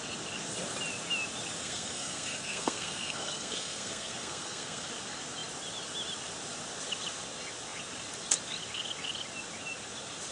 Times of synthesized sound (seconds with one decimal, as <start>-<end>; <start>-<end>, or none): 1.6-4.9